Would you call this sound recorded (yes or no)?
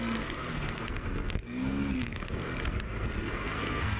no